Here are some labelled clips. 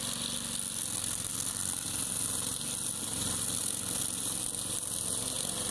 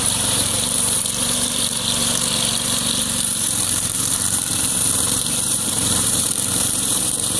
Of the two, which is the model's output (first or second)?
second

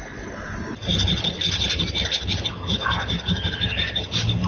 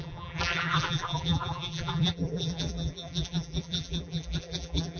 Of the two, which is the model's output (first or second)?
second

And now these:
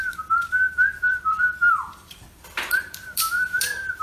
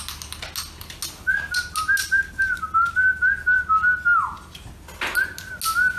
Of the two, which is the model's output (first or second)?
first